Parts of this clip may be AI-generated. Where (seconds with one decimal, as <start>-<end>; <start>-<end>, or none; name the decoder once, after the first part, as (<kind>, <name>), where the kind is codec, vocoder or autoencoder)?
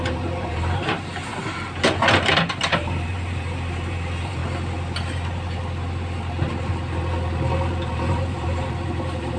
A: 0.0-1.3 (vocoder, BigVGAN v2); 2.2-4.4; 8.1-9.4